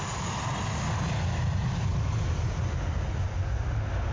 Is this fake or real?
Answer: real